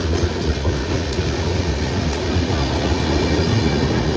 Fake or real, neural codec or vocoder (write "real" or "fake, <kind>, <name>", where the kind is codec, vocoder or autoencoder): fake, vocoder, Vocos